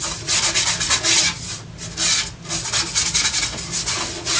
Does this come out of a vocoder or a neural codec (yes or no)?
no